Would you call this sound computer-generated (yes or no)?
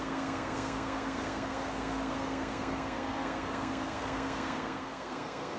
yes